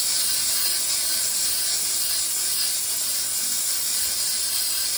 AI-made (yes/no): no